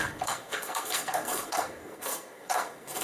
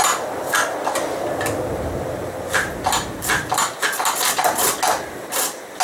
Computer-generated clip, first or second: first